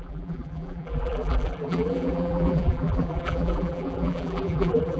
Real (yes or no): no